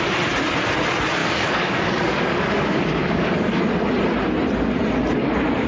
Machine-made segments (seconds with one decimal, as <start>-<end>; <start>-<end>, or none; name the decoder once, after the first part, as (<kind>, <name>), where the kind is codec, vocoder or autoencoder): 1.2-3.6 (codec, DAC)